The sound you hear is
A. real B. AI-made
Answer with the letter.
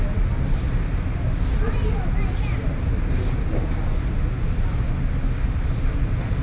A